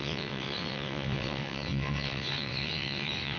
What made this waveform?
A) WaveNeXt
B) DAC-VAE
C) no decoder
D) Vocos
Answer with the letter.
A